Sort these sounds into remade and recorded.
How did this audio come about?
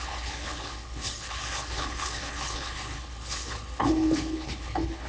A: remade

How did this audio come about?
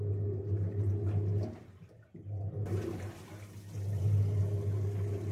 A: recorded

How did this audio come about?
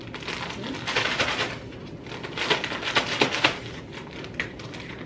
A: recorded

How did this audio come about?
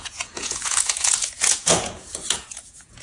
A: remade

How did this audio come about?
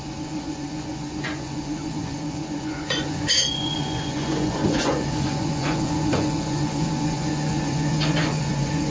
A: remade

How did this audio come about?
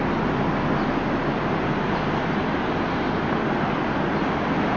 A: recorded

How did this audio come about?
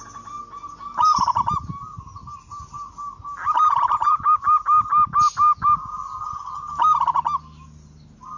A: recorded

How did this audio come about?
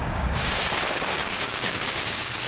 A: remade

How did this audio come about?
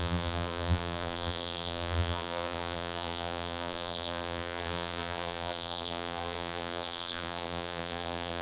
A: remade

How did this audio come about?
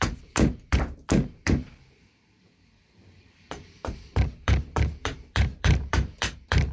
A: remade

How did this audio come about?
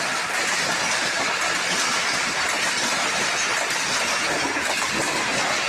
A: recorded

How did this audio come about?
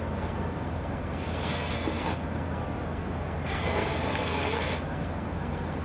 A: remade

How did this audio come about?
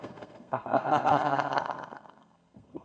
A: remade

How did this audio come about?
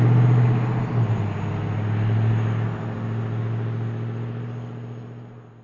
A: recorded